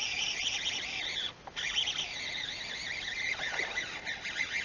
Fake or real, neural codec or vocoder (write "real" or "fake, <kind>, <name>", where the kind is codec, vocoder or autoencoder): real